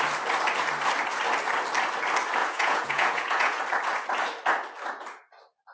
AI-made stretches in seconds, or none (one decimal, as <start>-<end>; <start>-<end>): 2.4-3.6